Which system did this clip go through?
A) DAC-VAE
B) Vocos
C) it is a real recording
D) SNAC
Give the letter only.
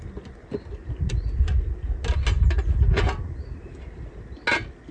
C